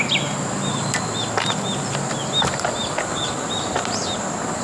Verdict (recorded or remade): recorded